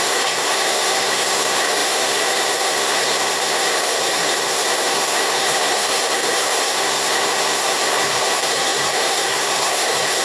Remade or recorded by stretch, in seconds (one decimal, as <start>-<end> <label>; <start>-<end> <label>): 0.0-10.2 remade